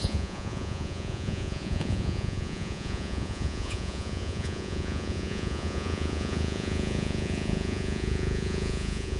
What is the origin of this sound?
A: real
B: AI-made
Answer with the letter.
B